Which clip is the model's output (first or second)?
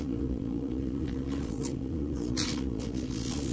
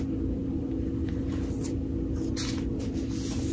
first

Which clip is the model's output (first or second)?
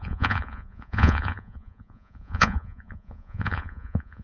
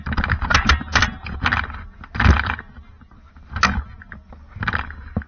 first